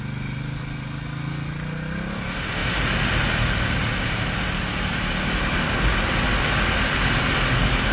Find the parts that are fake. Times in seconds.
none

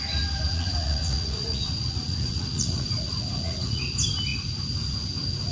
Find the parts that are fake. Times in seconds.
0.5-3.8 (vocoder, Vocos)

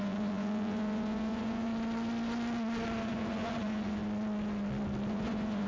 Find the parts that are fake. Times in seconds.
0.0-1.7 (vocoder, Vocos); 3.0-4.0; 5.1-5.7

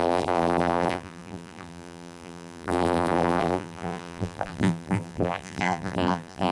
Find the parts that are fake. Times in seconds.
0.0-6.5 (vocoder, BigVGAN v2)

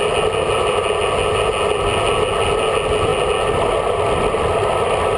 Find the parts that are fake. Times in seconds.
none